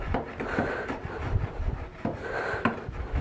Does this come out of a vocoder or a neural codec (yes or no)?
no